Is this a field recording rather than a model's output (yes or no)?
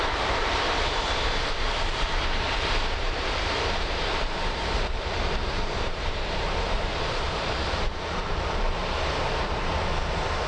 no